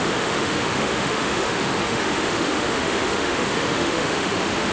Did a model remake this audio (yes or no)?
yes